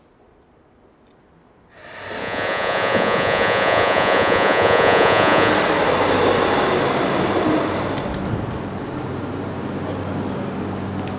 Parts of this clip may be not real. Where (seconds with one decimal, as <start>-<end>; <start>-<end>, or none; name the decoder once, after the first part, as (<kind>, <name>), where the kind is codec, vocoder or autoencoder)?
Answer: 2.2-5.5 (vocoder, Vocos)